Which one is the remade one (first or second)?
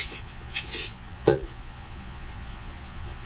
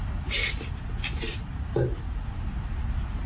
first